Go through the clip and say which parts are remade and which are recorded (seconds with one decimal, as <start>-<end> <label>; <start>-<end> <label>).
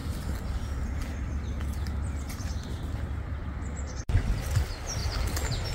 0.0-5.7 recorded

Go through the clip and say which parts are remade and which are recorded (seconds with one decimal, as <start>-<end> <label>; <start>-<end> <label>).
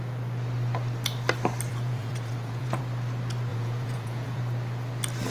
0.0-1.7 recorded; 1.7-2.8 remade; 2.8-3.5 recorded; 3.5-4.4 remade; 4.4-5.3 recorded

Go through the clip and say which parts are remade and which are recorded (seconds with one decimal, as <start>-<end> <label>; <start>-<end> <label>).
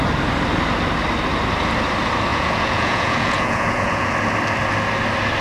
0.0-2.3 recorded; 2.3-4.1 remade; 4.1-5.4 recorded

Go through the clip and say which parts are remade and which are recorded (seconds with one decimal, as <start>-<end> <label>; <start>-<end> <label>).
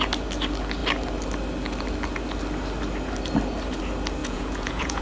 0.0-4.2 recorded; 4.2-5.0 remade